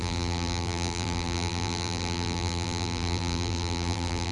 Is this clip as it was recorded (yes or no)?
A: no